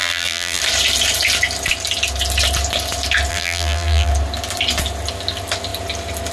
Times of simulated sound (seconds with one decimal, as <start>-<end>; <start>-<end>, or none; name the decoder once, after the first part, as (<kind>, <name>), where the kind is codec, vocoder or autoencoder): 0.0-0.6 (vocoder, BigVGAN v2); 3.3-4.1